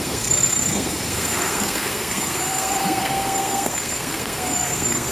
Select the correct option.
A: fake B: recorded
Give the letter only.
A